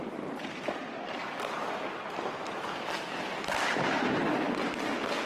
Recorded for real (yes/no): yes